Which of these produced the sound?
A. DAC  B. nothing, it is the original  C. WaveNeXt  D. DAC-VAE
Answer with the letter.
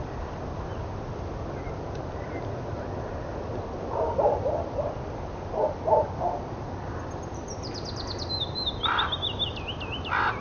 B